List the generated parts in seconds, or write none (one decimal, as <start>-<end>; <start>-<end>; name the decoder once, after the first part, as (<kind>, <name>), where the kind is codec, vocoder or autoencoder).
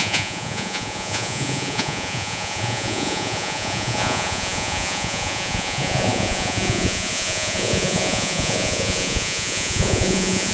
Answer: 0.0-10.5 (vocoder, Vocos)